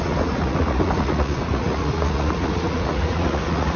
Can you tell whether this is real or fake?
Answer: fake